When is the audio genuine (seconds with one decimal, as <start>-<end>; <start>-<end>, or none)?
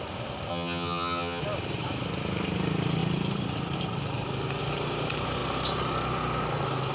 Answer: 0.0-0.5; 1.4-6.9